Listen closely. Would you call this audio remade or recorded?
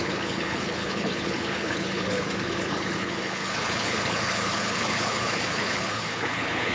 remade